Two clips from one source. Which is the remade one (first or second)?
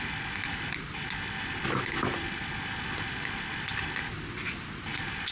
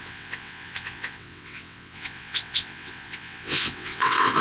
second